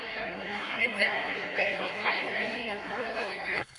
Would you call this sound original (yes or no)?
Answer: no